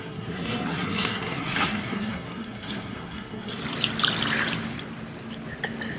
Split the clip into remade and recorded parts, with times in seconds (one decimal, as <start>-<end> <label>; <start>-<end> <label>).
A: 0.0-3.6 remade; 3.6-6.0 recorded